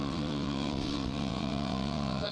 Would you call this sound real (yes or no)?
no